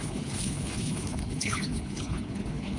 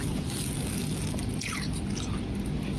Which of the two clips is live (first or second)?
second